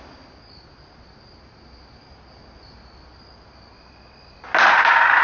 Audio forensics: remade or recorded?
recorded